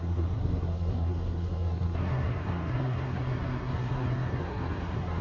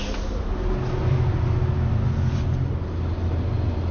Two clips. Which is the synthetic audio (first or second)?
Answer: first